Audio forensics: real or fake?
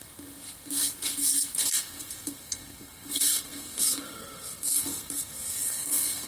fake